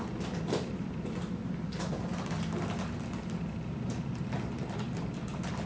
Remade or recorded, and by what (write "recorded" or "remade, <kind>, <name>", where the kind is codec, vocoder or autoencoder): recorded